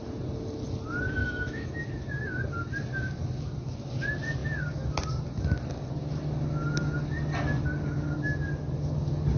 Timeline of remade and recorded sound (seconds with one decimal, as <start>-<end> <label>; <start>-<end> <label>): 0.0-1.2 recorded; 1.2-1.8 remade; 1.8-9.4 recorded